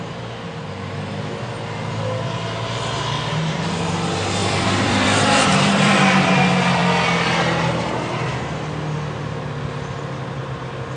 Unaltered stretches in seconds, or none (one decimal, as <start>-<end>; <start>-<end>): 0.0-4.4; 6.0-11.0